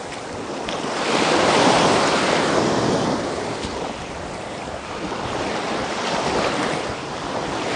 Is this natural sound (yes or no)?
yes